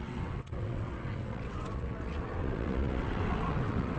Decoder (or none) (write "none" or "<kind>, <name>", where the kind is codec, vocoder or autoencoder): vocoder, WaveNeXt